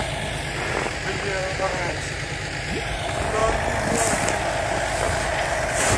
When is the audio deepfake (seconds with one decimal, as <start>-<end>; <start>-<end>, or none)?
1.4-2.3